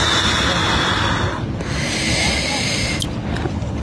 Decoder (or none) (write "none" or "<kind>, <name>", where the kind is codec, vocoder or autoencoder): none